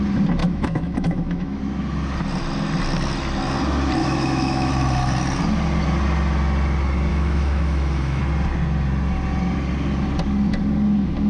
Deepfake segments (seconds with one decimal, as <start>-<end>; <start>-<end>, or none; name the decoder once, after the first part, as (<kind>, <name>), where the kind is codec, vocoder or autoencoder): 0.4-1.6 (autoencoder, DAC-VAE); 4.0-4.7; 7.1-8.2